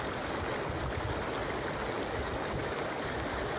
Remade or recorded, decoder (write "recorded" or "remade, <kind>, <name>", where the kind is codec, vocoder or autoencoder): recorded